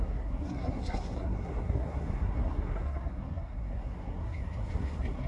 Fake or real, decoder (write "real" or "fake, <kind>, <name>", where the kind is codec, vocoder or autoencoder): fake, codec, SNAC